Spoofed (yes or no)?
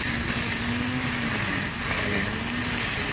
no